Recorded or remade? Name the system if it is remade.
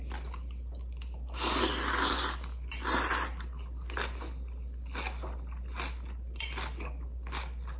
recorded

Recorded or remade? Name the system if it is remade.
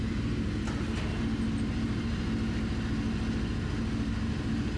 recorded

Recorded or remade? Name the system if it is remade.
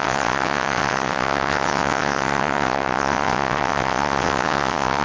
remade, vocoder, WaveNeXt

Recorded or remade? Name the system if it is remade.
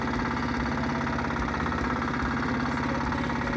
recorded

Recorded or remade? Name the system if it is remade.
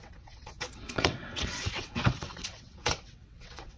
remade, vocoder, WaveNeXt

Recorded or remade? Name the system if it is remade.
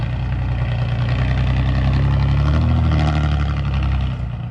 recorded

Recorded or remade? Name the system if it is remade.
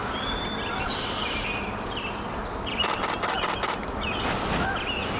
recorded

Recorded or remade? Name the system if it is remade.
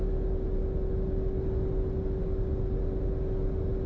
recorded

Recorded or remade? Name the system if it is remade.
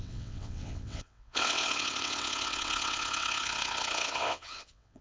remade, vocoder, WaveNeXt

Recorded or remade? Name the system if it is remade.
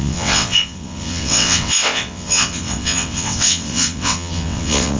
remade, vocoder, WaveNeXt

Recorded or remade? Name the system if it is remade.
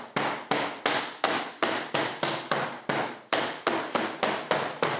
recorded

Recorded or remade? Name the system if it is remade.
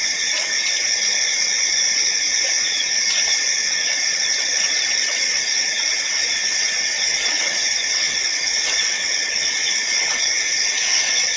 remade, vocoder, WaveNeXt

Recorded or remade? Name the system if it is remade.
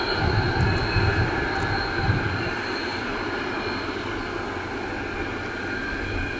recorded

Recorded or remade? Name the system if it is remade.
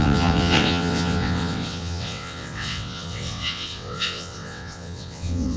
remade, vocoder, WaveNeXt